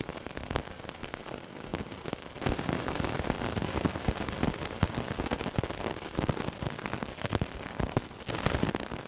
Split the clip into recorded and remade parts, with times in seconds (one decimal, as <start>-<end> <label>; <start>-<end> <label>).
0.0-9.1 remade